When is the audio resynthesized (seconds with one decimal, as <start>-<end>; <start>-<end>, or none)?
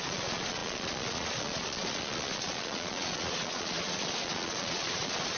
0.0-5.4